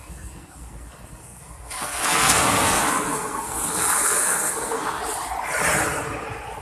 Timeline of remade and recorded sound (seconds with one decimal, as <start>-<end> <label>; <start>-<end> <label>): 0.0-5.0 remade; 5.0-6.6 recorded